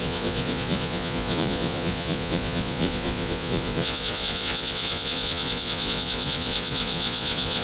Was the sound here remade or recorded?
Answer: remade